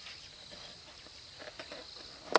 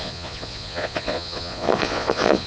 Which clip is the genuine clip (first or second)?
first